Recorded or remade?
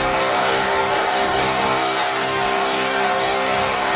remade